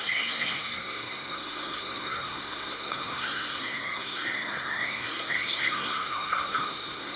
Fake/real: fake